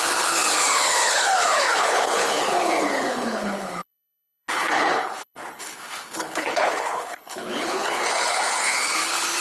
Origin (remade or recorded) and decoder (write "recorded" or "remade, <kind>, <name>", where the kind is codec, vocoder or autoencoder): remade, codec, HILCodec